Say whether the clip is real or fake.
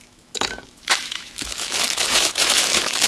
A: fake